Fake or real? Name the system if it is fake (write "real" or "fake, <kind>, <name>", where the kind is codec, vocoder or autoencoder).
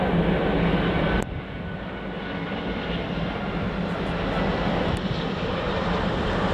real